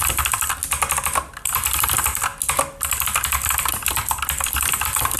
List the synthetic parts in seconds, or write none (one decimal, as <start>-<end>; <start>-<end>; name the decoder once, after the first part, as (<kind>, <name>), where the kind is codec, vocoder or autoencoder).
0.0-0.6 (vocoder, BigVGAN v2); 1.4-2.3; 3.9-5.2